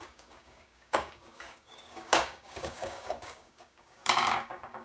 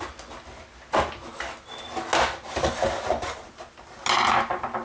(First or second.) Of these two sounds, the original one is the second